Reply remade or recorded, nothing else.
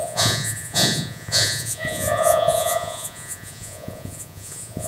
remade